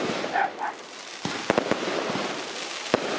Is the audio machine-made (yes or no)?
no